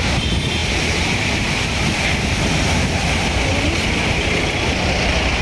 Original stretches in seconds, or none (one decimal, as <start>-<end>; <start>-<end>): 0.0-5.4